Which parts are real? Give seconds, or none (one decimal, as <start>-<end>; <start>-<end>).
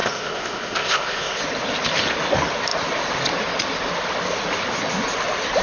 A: 1.4-5.6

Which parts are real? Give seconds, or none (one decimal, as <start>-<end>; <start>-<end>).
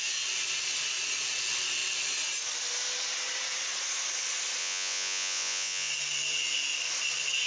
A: 0.0-4.6; 5.9-7.5